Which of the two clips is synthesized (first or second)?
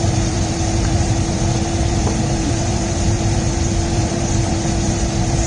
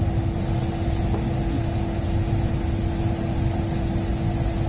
first